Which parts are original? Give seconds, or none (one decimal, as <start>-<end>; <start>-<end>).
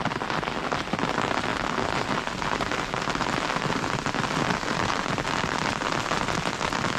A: 0.0-7.0